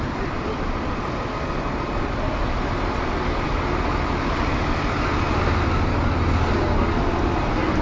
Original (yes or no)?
yes